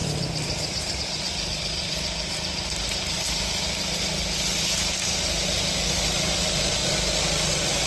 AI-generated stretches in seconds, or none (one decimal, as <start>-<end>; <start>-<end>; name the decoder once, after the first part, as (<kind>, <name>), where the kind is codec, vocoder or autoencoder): none